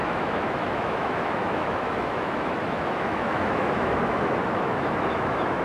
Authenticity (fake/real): fake